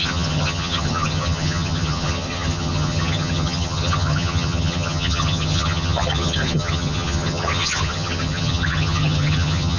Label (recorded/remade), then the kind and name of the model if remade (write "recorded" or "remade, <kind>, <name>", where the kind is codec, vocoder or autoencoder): remade, vocoder, HiFi-GAN